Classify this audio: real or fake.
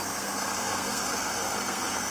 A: fake